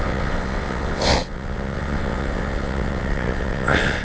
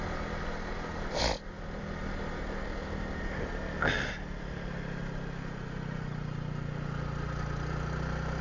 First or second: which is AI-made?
first